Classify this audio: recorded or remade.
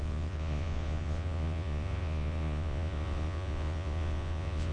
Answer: remade